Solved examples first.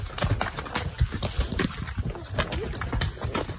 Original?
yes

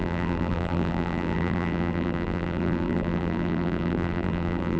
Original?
no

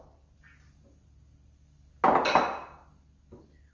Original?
yes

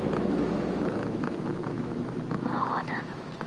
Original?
no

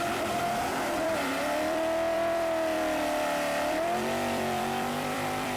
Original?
no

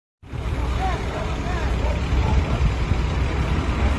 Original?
yes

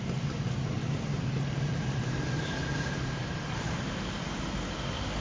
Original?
no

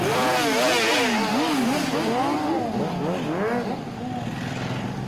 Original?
yes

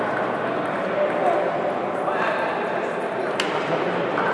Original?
yes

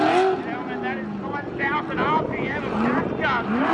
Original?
yes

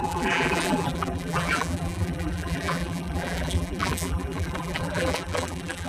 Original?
no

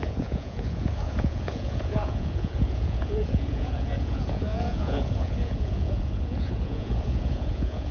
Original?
no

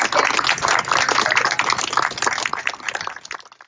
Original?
yes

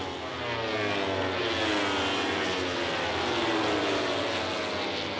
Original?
yes